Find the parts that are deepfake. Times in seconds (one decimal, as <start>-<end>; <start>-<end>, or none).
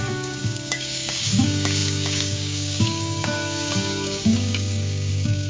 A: 0.0-5.5